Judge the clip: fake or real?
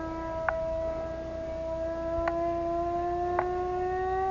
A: real